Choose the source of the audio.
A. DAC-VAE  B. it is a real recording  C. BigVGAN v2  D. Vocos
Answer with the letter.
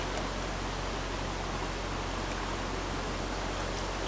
B